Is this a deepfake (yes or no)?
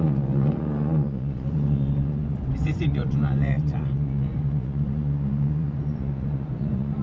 yes